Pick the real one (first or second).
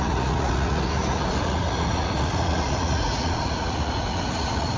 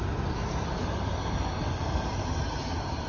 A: second